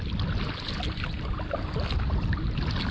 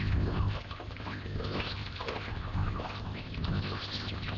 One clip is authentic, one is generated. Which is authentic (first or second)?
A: first